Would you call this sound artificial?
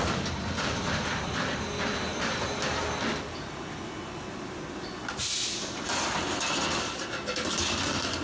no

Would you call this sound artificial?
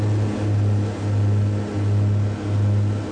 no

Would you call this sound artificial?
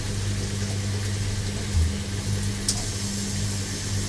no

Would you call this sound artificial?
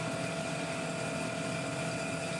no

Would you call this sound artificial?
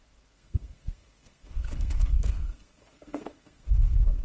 yes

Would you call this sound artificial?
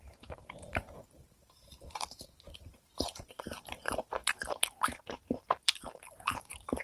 yes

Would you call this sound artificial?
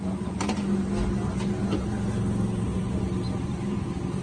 no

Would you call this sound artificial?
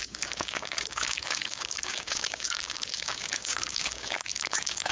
yes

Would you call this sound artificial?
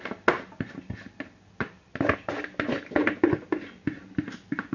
no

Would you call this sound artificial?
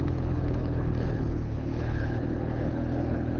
yes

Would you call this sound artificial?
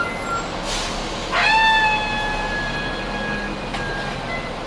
no